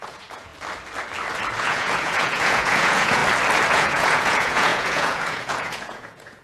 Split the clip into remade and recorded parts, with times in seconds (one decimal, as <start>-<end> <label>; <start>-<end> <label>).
0.0-0.5 remade; 0.5-1.6 recorded; 1.6-3.2 remade; 3.2-3.7 recorded; 3.7-6.4 remade